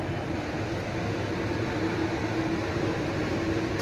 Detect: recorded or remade recorded